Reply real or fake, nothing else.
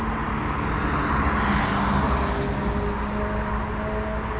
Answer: real